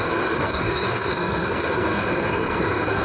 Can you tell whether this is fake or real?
fake